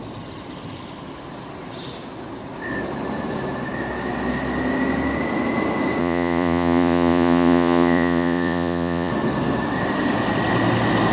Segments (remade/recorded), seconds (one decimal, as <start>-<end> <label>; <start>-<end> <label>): 0.0-6.0 recorded; 6.0-9.1 remade; 9.1-11.1 recorded